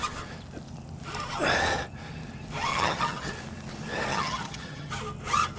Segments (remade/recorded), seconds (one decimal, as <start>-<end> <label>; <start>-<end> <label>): 0.0-2.7 recorded; 2.7-3.3 remade; 3.3-4.1 recorded; 4.1-4.9 remade; 4.9-5.6 recorded